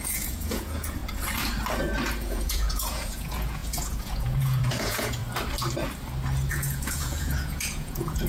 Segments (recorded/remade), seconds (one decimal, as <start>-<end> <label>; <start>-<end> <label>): 0.0-1.0 remade; 1.0-2.2 recorded; 2.2-5.2 remade; 5.2-6.5 recorded; 6.5-8.3 remade